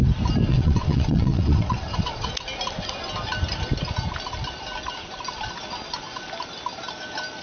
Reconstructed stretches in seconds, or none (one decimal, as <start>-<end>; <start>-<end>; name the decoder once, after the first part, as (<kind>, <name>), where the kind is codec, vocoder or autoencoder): 0.5-2.3 (vocoder, WaveNeXt)